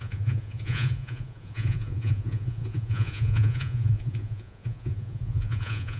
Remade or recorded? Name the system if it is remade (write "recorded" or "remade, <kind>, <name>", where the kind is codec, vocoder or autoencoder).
remade, vocoder, Vocos